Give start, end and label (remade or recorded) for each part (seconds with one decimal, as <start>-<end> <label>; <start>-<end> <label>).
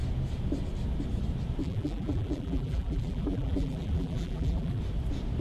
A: 0.0-1.6 recorded; 1.6-4.8 remade; 4.8-5.4 recorded